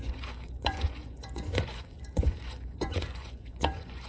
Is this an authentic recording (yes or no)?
no